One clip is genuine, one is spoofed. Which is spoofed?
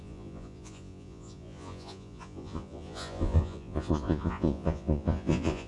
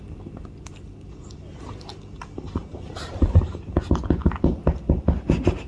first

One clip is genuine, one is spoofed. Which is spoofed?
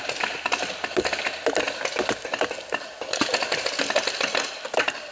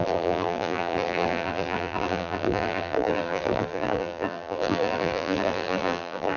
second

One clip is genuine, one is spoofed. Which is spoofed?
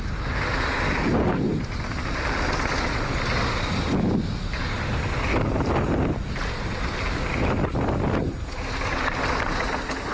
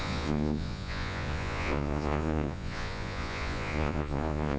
second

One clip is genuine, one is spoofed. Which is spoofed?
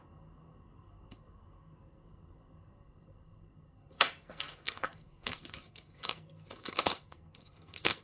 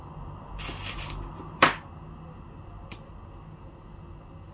first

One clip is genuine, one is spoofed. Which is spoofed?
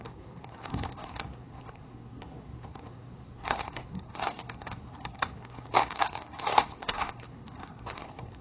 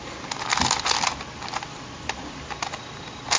first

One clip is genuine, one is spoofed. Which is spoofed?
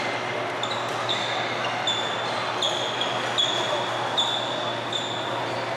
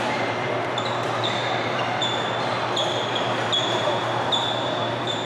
second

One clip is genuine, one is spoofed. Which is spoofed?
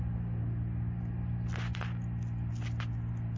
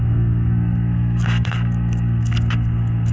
second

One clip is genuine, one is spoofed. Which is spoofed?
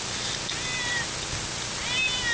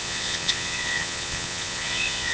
second